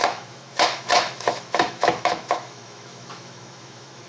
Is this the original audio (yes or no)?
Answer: no